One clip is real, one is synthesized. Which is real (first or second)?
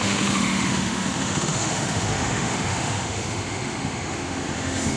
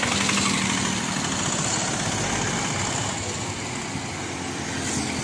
second